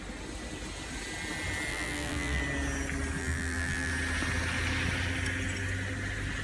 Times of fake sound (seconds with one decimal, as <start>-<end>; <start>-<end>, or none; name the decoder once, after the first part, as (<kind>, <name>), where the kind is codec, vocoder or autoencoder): 1.7-2.4 (vocoder, BigVGAN v2); 3.2-3.9